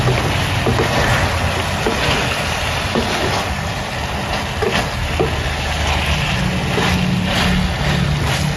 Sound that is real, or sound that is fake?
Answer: real